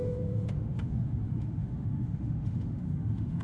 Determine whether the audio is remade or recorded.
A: remade